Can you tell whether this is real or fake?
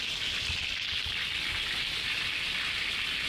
real